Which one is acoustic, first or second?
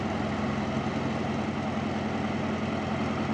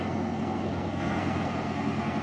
first